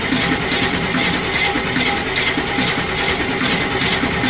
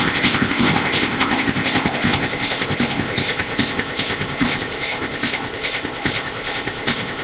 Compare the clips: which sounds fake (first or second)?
second